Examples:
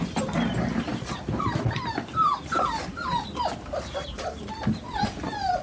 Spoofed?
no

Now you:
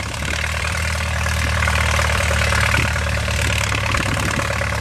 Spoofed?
yes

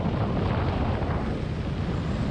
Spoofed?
no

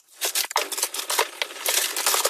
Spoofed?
no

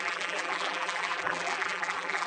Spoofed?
yes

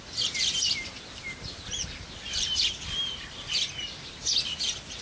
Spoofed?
yes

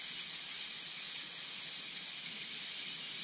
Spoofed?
no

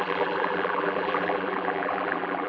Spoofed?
yes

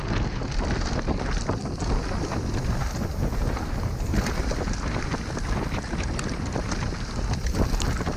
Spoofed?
no